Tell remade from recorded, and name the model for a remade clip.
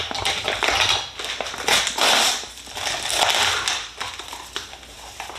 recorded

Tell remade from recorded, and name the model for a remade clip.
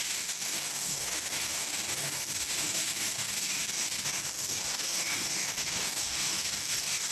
remade, codec, DAC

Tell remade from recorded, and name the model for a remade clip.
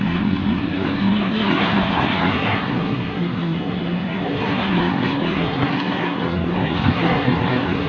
remade, codec, SNAC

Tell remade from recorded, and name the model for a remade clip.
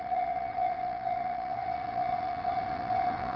remade, vocoder, WaveNeXt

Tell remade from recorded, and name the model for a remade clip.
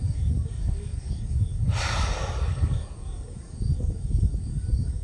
remade, codec, DAC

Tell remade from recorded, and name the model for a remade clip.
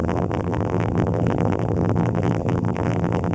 remade, vocoder, BigVGAN v2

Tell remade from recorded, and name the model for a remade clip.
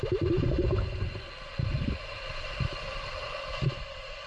recorded